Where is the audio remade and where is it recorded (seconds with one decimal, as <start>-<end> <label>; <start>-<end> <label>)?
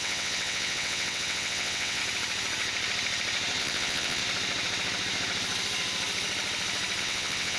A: 0.0-2.0 remade; 2.0-3.6 recorded; 3.6-4.2 remade; 4.2-7.0 recorded; 7.0-7.6 remade